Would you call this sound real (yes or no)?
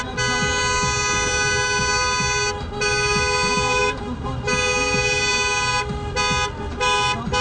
yes